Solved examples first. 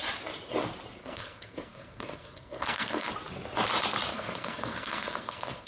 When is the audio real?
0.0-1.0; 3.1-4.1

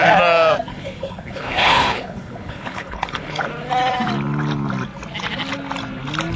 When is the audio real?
0.0-0.7; 3.5-6.4

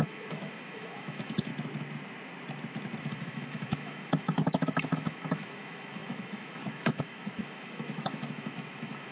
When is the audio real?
1.5-3.0

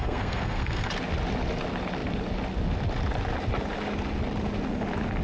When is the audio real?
0.9-5.2

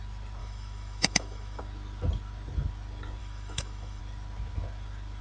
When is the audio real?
0.0-0.4; 1.6-3.2; 4.0-5.2

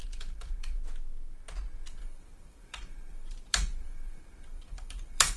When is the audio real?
0.8-2.0

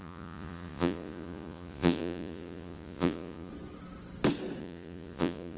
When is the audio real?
3.5-4.6

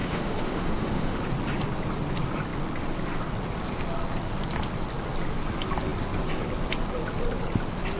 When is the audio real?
1.2-8.0